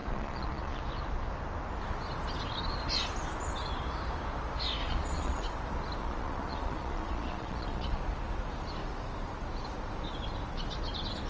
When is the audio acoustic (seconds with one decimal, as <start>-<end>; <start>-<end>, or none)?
0.8-4.8; 5.4-6.0; 8.0-11.3